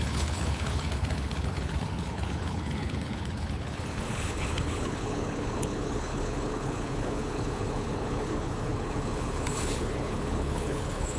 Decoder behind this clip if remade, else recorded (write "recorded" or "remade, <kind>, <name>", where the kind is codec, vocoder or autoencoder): remade, codec, HILCodec